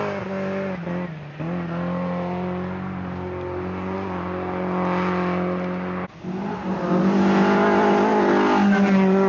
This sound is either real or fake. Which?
real